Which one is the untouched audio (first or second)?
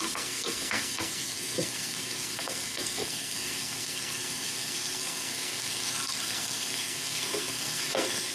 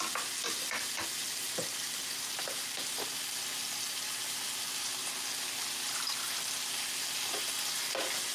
second